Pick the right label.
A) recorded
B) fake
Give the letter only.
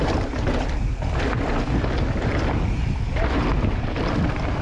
A